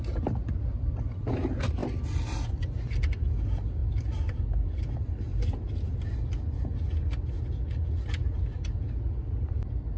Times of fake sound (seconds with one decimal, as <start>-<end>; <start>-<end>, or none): none